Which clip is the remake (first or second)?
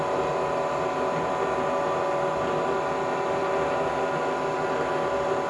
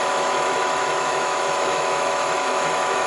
second